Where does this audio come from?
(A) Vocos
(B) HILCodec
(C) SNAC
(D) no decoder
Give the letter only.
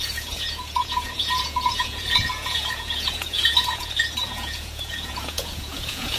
A